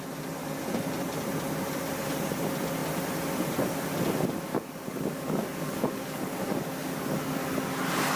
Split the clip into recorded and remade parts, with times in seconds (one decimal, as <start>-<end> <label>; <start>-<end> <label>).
0.0-4.5 recorded; 4.5-7.5 remade; 7.5-8.2 recorded